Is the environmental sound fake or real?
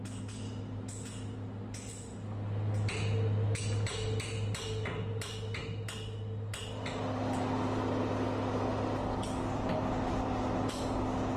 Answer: real